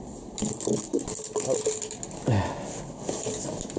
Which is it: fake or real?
real